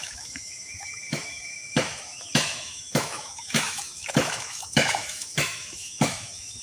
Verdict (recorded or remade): remade